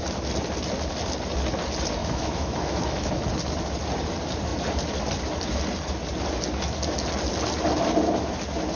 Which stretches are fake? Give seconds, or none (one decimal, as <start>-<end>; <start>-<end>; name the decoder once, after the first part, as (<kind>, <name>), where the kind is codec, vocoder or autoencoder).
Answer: 2.0-3.1 (autoencoder, DAC-VAE)